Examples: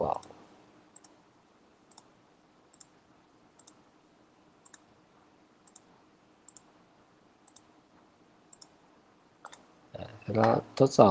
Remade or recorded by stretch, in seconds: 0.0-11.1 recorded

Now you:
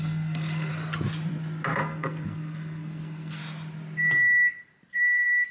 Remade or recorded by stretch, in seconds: 0.0-0.7 remade; 0.7-1.8 recorded; 1.8-3.4 remade; 3.4-4.9 recorded; 4.9-5.5 remade

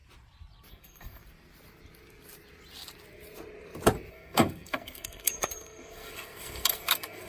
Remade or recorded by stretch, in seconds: 0.0-0.7 recorded; 0.7-1.2 remade; 1.2-4.1 recorded; 4.1-7.3 remade

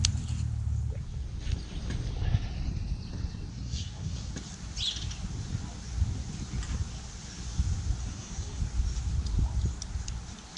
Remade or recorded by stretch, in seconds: 0.0-3.5 recorded; 3.5-4.3 remade; 4.3-8.0 recorded; 8.0-8.6 remade; 8.6-10.6 recorded